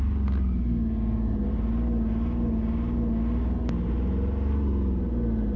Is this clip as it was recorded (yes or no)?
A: yes